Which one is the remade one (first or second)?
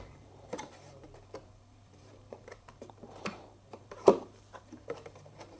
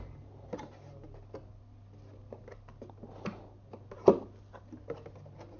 first